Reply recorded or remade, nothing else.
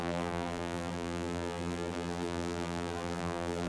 remade